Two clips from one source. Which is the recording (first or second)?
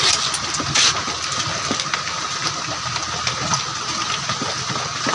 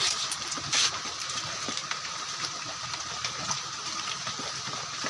first